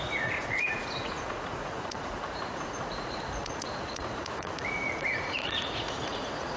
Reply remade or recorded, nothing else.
remade